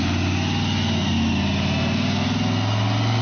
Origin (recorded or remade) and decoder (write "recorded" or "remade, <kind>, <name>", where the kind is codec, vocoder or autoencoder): recorded